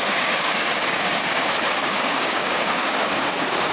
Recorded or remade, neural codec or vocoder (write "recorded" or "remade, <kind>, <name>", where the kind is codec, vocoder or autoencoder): remade, codec, DAC